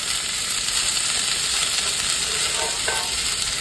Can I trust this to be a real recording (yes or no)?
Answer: yes